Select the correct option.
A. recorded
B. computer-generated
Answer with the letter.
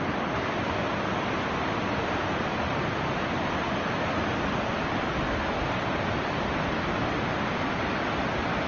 A